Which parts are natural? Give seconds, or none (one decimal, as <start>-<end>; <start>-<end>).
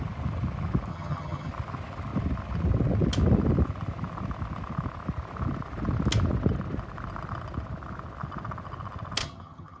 0.0-0.9; 1.5-9.2